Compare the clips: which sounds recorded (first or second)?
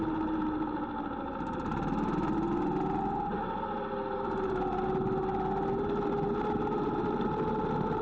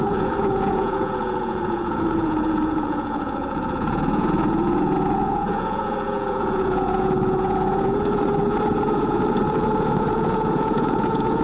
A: first